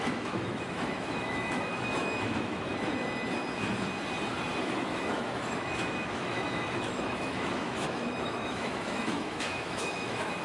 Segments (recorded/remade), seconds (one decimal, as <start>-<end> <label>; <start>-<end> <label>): 0.0-2.7 remade; 2.7-4.6 recorded; 4.6-10.4 remade